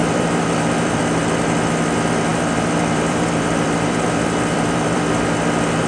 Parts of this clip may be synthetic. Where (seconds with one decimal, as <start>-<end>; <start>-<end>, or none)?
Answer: 0.0-1.0; 2.3-5.9